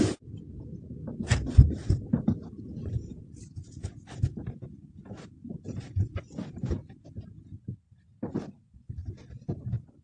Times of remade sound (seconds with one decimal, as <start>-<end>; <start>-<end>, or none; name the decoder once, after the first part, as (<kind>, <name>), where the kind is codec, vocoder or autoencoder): 2.8-6.3 (vocoder, BigVGAN v2)